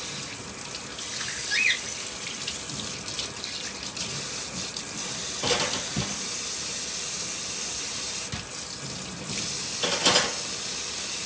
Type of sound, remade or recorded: recorded